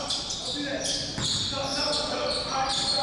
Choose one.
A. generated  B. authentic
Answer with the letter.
B